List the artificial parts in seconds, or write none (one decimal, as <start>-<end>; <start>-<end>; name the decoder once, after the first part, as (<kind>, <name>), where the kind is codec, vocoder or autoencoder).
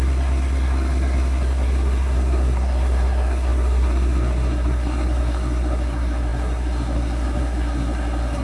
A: 0.0-8.4 (codec, SNAC)